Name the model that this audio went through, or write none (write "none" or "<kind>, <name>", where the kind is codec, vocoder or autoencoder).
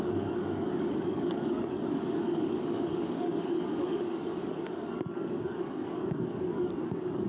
codec, DAC